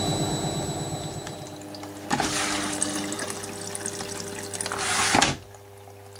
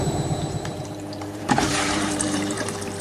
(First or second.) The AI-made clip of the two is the second